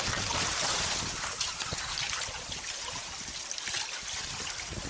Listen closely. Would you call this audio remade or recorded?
recorded